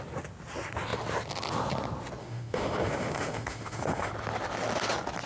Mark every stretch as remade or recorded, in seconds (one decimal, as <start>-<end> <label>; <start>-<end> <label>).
0.0-2.2 recorded; 2.2-4.1 remade; 4.1-5.3 recorded